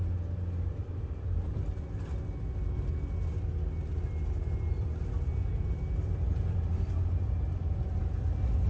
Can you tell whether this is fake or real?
real